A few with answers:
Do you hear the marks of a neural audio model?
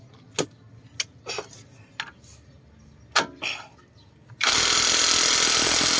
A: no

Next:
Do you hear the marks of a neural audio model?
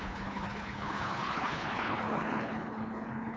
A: yes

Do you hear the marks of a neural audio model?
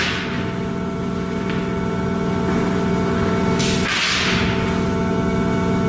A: no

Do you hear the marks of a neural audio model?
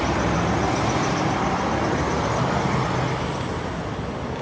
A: no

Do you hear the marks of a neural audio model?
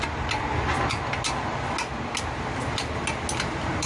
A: no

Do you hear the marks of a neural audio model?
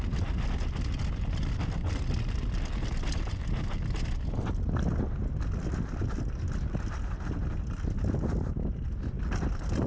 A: no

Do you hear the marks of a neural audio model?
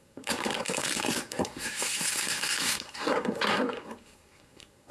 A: yes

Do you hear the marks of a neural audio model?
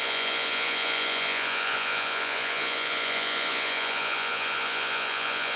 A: yes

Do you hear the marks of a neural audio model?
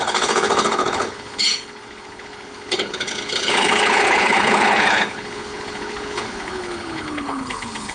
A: yes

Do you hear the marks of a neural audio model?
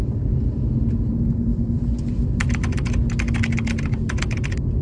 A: no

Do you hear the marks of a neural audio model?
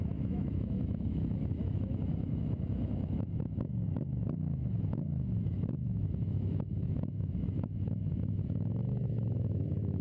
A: yes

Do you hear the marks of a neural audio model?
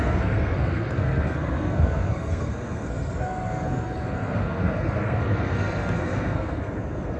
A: yes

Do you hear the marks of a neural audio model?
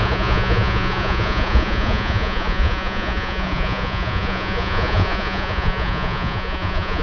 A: yes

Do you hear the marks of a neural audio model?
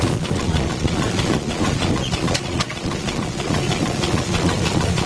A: yes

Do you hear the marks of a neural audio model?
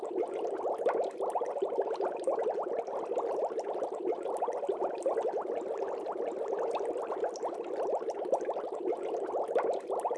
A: no